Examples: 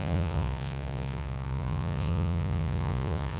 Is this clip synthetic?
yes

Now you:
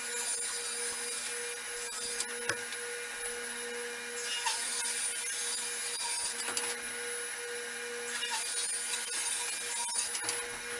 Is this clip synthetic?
no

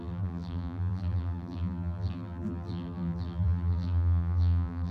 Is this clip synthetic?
yes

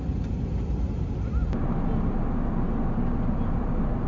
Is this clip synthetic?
no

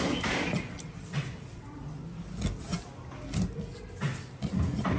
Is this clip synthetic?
no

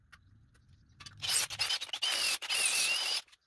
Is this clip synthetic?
no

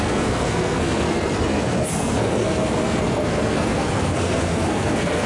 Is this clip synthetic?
yes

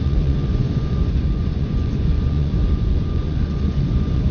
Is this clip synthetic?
yes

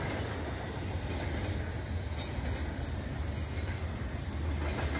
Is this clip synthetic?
no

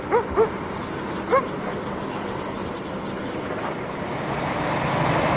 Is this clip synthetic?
no